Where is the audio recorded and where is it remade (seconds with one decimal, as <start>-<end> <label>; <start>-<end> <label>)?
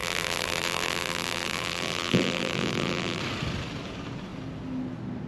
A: 0.0-3.2 remade; 3.2-5.3 recorded